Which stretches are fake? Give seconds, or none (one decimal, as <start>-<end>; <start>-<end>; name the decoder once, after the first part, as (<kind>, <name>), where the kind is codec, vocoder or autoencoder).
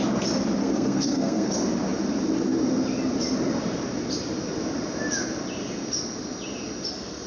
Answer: 0.6-1.5 (codec, SNAC)